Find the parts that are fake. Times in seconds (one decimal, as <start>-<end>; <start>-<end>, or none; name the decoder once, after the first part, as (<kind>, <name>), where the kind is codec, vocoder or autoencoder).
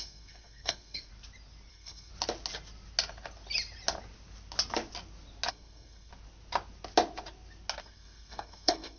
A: 0.0-1.1 (codec, SNAC); 1.7-2.1; 5.5-6.1; 7.8-9.0